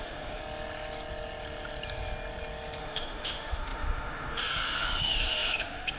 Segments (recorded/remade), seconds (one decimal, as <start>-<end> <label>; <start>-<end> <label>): 0.0-0.4 remade; 0.4-2.8 recorded; 2.8-6.0 remade